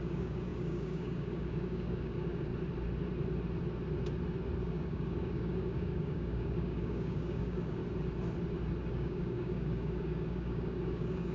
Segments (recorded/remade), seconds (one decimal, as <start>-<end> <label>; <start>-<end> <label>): 0.0-2.5 remade; 2.5-4.6 recorded; 4.6-7.8 remade; 7.8-8.9 recorded; 8.9-11.3 remade